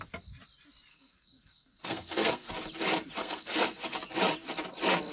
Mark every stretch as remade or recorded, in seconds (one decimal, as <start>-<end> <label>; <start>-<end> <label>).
0.0-0.9 recorded; 0.9-2.5 remade; 2.5-3.2 recorded; 3.2-3.8 remade; 3.8-5.1 recorded

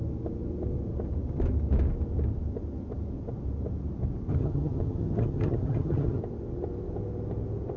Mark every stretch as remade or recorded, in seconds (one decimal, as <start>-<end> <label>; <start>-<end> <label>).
0.0-4.3 recorded; 4.3-6.2 remade; 6.2-7.8 recorded

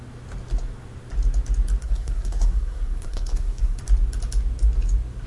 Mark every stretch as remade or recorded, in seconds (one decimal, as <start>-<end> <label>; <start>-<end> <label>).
0.0-1.8 recorded; 1.8-3.8 remade; 3.8-5.3 recorded

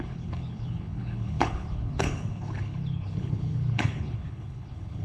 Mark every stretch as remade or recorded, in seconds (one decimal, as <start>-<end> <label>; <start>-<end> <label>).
0.0-5.0 remade

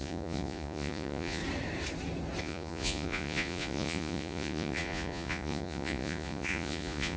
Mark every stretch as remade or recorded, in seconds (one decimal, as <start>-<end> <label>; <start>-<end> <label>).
0.0-1.4 remade; 1.4-2.4 recorded; 2.4-7.2 remade

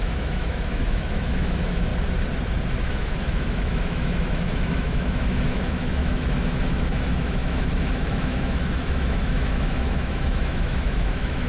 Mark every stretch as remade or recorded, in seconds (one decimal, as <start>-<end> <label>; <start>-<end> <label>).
0.0-1.9 remade; 1.9-2.8 recorded; 2.8-11.5 remade

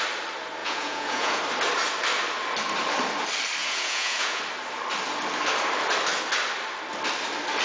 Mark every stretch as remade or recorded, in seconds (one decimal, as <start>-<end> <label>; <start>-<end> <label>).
0.0-0.6 recorded; 0.6-1.4 remade; 1.4-3.6 recorded; 3.6-4.4 remade; 4.4-7.6 recorded